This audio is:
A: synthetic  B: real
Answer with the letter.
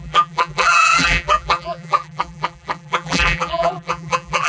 A